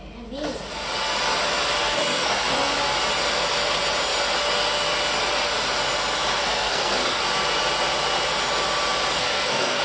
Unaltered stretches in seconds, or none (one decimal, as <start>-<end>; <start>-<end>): 0.0-1.8; 2.4-6.4; 7.2-9.2